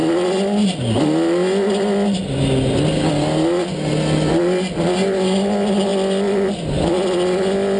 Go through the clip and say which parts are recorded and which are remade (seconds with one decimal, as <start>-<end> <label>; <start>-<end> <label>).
0.0-7.8 recorded